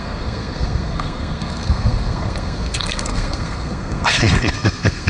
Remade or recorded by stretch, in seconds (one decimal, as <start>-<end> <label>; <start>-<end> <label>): 0.0-5.1 remade